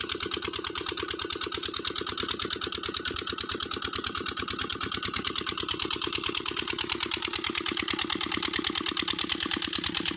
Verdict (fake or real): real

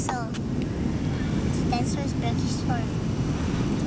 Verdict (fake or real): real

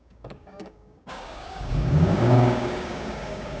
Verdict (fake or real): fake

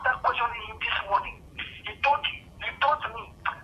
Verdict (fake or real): fake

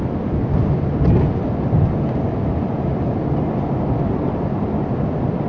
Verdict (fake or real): real